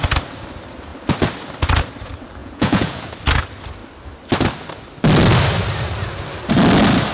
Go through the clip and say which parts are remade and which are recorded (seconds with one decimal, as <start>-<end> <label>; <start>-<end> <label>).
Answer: 0.0-2.4 recorded; 2.4-3.1 remade; 3.1-7.1 recorded